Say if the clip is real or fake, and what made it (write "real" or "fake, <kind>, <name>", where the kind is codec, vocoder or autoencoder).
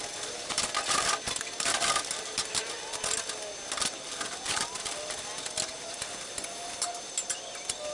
real